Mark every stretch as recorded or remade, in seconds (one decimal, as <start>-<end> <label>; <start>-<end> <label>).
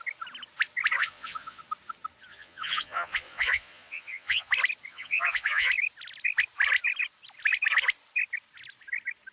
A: 0.0-1.0 recorded; 1.0-1.6 remade; 1.6-2.3 recorded; 2.3-4.5 remade; 4.5-4.9 recorded; 4.9-5.7 remade; 5.7-9.3 recorded